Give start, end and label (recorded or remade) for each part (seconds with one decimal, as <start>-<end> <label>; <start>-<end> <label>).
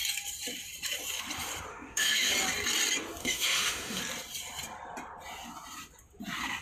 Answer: 0.0-1.7 recorded; 1.7-2.3 remade; 2.3-3.2 recorded; 3.2-4.0 remade; 4.0-6.6 recorded